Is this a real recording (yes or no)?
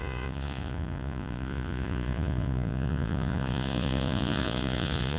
no